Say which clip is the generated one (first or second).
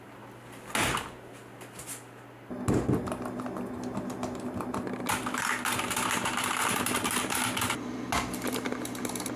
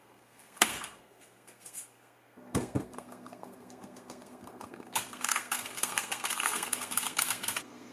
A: second